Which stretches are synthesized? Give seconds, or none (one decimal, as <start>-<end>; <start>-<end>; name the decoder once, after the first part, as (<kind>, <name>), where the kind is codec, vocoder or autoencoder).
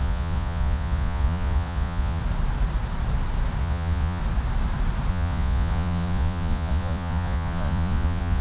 0.0-2.2 (vocoder, Vocos); 3.6-4.2; 5.1-8.4